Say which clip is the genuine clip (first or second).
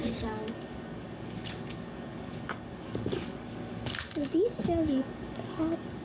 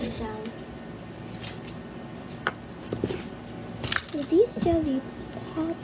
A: second